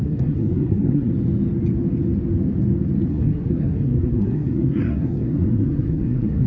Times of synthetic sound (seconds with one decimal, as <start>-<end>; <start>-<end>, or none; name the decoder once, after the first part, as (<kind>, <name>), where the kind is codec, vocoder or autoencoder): 0.0-1.1 (codec, SNAC); 3.1-6.5